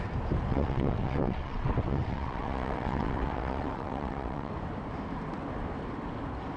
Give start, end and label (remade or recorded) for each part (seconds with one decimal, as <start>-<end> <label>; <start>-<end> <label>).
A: 0.0-0.5 recorded; 0.5-4.5 remade; 4.5-6.6 recorded